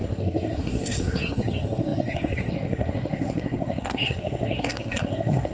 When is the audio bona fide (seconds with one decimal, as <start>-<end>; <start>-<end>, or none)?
none